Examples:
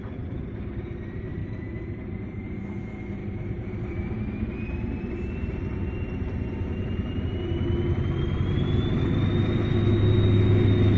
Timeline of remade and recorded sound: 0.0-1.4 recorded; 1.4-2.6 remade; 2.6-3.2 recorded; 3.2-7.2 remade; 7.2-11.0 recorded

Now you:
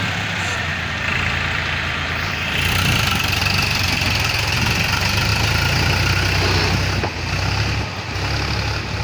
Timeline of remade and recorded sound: 0.0-3.4 remade; 3.4-4.4 recorded; 4.4-5.3 remade; 5.3-9.0 recorded

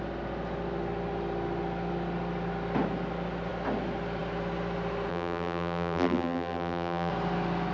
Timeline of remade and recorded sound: 0.0-5.1 recorded; 5.1-7.1 remade; 7.1-7.7 recorded

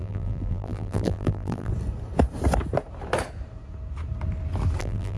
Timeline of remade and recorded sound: 0.0-1.7 remade; 1.7-4.8 recorded; 4.8-5.2 remade

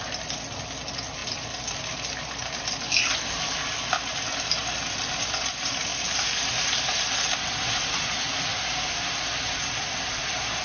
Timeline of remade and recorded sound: 0.0-1.2 recorded; 1.2-1.8 remade; 1.8-4.6 recorded; 4.6-5.5 remade; 5.5-5.9 recorded; 5.9-6.7 remade; 6.7-8.5 recorded; 8.5-9.1 remade; 9.1-10.6 recorded

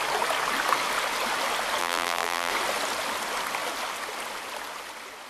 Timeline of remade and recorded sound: 0.0-1.8 recorded; 1.8-2.5 remade; 2.5-5.3 recorded